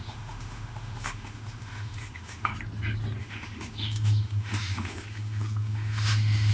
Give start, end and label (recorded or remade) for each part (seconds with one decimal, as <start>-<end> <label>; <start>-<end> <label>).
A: 0.0-2.5 remade; 2.5-3.2 recorded; 3.2-6.5 remade